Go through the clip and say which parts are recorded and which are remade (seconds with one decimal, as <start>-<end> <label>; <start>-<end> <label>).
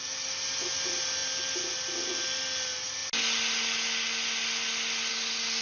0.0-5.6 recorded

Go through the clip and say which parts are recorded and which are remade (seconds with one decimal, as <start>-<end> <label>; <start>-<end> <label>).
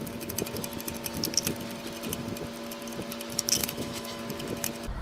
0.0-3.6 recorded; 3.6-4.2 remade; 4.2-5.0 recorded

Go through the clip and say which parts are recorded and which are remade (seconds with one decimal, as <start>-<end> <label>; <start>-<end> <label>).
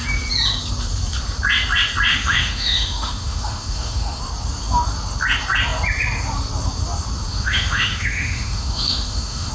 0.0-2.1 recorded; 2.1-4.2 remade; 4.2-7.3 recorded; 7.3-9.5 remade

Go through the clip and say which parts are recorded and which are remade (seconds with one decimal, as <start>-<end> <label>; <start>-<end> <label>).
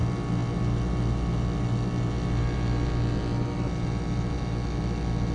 0.0-5.3 recorded